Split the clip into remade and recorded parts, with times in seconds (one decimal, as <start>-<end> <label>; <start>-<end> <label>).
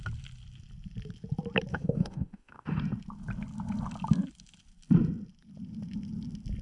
0.0-1.7 recorded; 1.7-2.8 remade; 2.8-6.6 recorded